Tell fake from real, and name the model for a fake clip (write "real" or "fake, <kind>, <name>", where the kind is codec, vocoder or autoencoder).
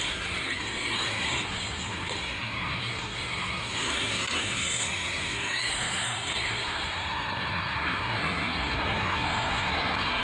fake, codec, SNAC